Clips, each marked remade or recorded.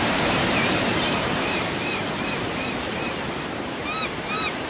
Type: remade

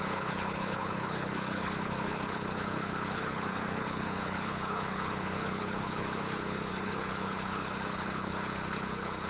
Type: remade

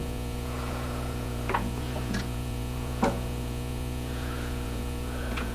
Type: remade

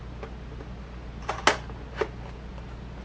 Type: recorded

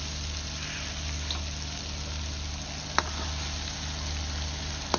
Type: recorded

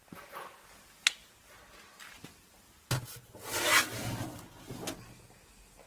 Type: recorded